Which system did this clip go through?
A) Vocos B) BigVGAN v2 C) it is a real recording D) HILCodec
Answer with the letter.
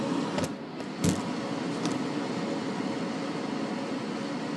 C